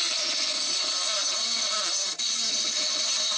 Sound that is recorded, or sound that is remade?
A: recorded